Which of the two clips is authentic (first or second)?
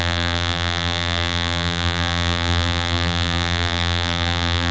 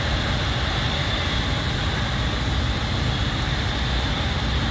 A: second